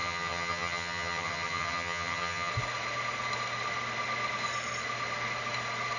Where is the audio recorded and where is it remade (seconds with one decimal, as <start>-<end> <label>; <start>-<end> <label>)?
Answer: 0.0-2.5 remade; 2.5-6.0 recorded